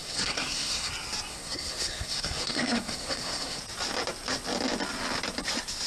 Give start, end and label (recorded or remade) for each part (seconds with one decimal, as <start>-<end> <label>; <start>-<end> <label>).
0.0-0.9 remade; 0.9-1.3 recorded; 1.3-3.6 remade; 3.6-5.9 recorded